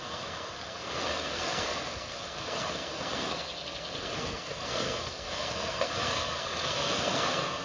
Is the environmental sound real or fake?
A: fake